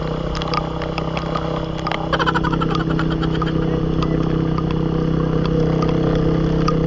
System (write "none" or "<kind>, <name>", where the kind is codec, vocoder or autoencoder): none